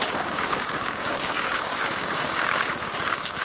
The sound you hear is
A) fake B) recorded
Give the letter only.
A